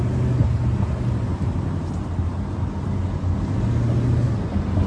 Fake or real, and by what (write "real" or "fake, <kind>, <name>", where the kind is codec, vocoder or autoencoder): real